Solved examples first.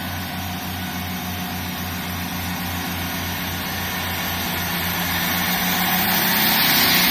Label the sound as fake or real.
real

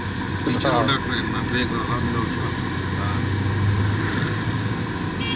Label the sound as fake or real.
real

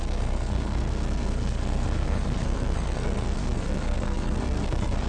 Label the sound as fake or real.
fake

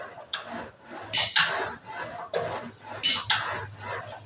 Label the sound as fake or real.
real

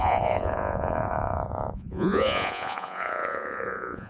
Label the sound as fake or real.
fake